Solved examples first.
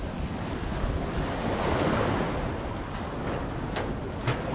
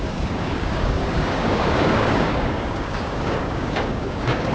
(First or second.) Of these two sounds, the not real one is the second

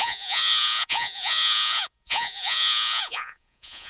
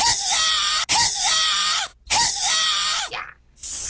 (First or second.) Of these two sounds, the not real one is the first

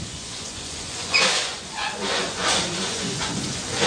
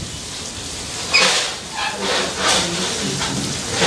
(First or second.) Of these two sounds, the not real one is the first